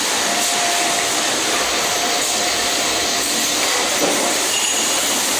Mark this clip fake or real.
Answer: fake